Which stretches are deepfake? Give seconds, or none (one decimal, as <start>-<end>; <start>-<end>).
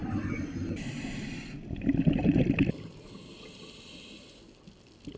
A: 0.0-3.1